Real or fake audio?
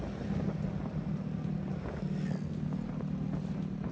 real